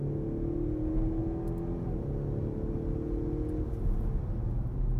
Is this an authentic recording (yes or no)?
yes